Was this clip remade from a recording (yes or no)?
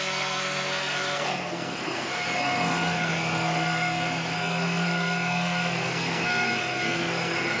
yes